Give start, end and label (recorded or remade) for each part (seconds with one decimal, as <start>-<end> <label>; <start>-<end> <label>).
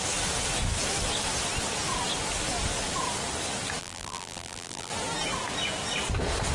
0.0-3.8 recorded; 3.8-4.9 remade; 4.9-6.5 recorded